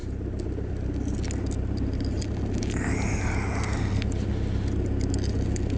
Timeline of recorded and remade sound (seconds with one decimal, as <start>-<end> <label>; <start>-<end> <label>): 0.0-5.8 recorded